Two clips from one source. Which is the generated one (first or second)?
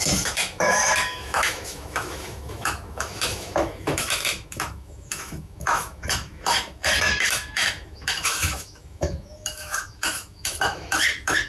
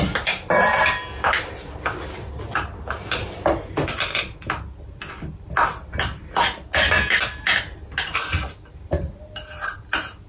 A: first